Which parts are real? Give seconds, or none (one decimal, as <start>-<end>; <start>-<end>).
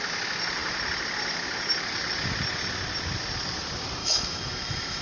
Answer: 0.0-4.0